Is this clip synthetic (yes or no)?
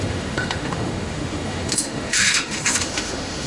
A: yes